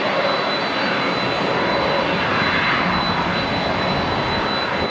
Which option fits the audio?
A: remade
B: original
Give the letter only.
B